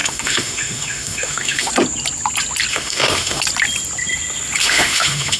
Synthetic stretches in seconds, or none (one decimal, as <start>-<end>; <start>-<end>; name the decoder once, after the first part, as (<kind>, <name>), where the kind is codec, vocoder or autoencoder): 0.0-1.7 (autoencoder, DAC-VAE); 2.7-3.4; 4.6-5.4